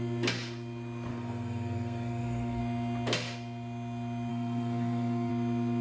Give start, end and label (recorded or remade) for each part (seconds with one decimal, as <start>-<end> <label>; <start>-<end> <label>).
0.0-1.1 recorded; 1.1-2.6 remade; 2.6-4.3 recorded; 4.3-5.3 remade; 5.3-5.8 recorded